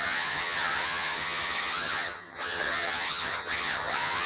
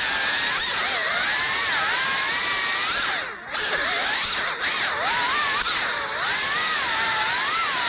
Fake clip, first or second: first